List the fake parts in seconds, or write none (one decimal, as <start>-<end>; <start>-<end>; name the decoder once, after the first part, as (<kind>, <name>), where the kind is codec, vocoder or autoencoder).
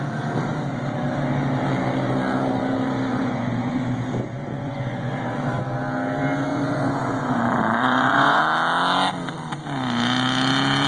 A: 3.1-5.6 (vocoder, Vocos); 6.5-8.4